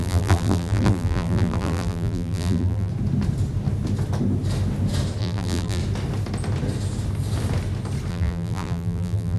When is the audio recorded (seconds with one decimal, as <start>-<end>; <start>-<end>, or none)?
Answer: 2.9-5.2; 5.8-8.1